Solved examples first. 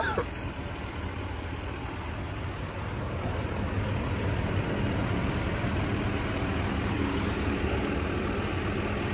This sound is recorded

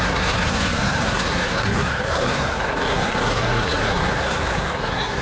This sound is remade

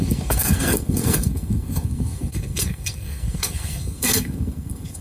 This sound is remade